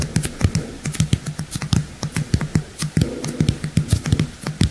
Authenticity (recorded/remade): recorded